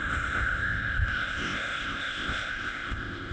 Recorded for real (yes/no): no